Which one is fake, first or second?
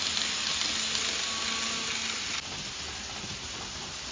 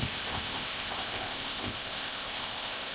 second